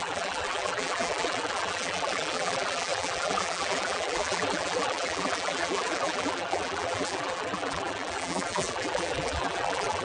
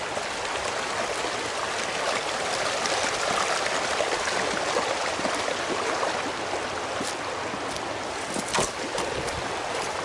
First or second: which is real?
second